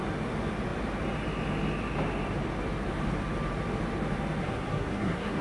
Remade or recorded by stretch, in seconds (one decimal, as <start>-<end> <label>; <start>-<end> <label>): 0.0-4.4 recorded; 4.4-5.4 remade

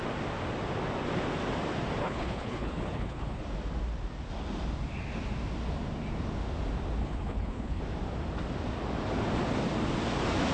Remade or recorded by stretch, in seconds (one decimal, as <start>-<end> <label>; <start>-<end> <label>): 0.0-2.0 recorded; 2.0-3.4 remade; 3.4-7.0 recorded; 7.0-7.8 remade; 7.8-10.5 recorded

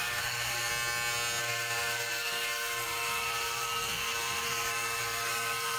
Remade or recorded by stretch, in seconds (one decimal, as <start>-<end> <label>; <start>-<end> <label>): 0.0-0.7 remade; 0.7-1.4 recorded; 1.4-5.8 remade

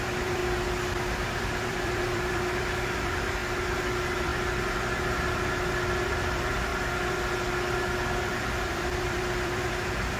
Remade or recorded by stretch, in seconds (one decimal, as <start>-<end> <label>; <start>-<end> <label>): 0.0-0.4 remade; 0.4-1.2 recorded; 1.2-3.4 remade; 3.4-3.9 recorded; 3.9-4.3 remade; 4.3-6.1 recorded; 6.1-6.7 remade; 6.7-8.1 recorded; 8.1-10.2 remade